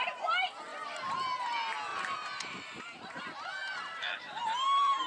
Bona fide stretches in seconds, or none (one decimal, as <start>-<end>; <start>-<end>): 0.0-0.7; 1.2-1.9; 3.2-3.6